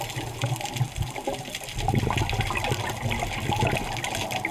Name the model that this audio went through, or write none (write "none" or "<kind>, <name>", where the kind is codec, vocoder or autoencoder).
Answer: none